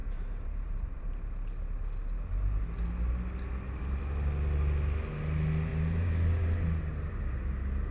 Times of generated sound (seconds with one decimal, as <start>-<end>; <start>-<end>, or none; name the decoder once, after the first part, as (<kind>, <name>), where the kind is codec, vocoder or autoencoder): 0.0-1.1 (vocoder, BigVGAN v2); 5.7-6.8